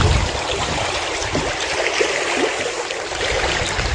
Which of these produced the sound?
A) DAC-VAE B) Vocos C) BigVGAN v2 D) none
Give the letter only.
D